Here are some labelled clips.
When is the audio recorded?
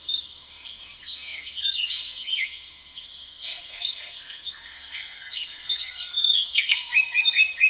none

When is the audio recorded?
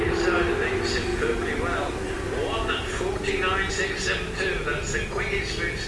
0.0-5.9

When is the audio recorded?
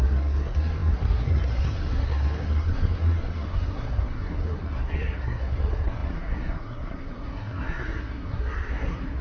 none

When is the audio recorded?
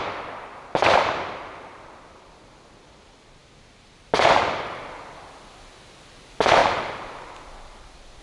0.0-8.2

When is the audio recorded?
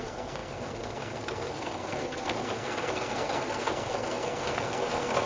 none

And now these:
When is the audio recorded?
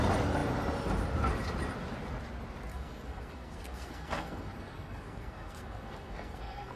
0.0-2.7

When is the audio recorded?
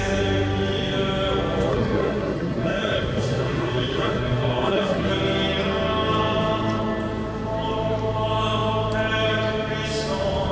0.0-1.7; 5.1-10.5